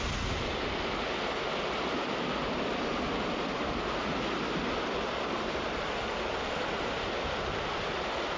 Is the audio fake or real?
real